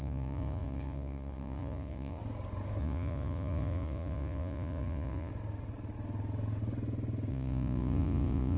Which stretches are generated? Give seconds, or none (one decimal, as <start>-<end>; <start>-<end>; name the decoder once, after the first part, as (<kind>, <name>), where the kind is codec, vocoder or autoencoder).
0.0-2.2 (vocoder, Vocos); 2.8-5.3; 7.3-8.6